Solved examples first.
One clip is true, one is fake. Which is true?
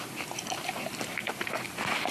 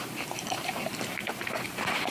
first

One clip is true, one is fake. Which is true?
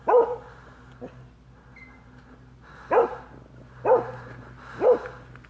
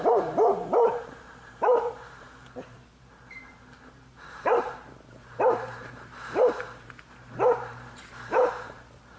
first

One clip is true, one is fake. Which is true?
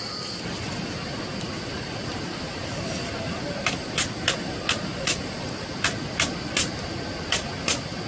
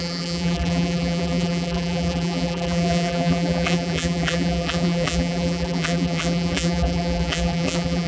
first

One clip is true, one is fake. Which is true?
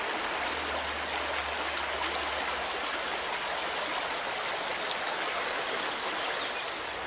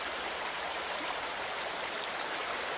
first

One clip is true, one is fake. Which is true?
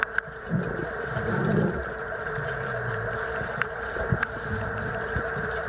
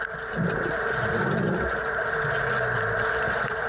second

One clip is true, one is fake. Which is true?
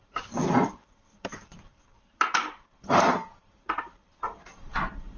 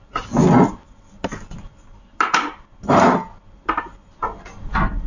second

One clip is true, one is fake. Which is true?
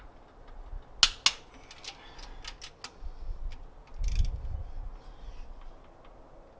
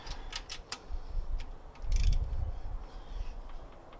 first